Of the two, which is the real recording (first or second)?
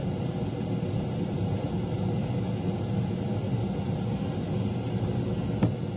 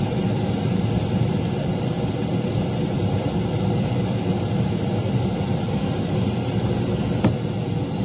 first